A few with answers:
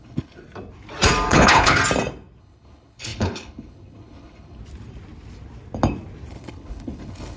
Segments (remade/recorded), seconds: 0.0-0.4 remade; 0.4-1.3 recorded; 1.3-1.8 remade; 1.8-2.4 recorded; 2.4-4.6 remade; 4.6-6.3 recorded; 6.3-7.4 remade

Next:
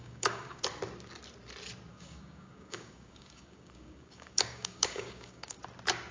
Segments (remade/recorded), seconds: 0.0-0.6 remade; 0.6-1.9 recorded; 1.9-5.6 remade; 5.6-6.1 recorded

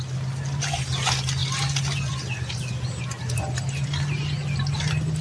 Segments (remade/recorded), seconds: 0.0-5.2 recorded

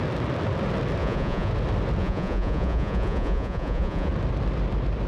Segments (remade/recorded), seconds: 0.0-1.0 recorded; 1.0-1.5 remade; 1.5-2.0 recorded; 2.0-4.1 remade; 4.1-5.1 recorded

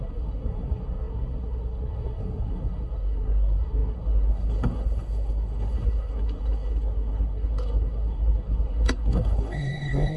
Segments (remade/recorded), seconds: 0.0-10.2 remade

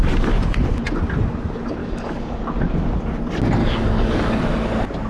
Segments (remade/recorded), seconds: 0.0-1.8 recorded; 1.8-2.4 remade; 2.4-3.6 recorded; 3.6-4.4 remade; 4.4-5.1 recorded

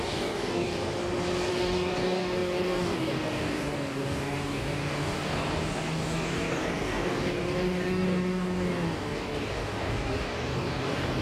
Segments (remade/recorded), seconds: 0.0-0.9 remade; 0.9-1.5 recorded; 1.5-11.2 remade